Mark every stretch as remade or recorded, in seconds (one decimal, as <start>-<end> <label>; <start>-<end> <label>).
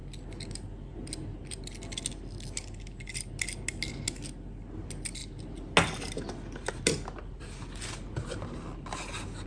0.0-9.5 recorded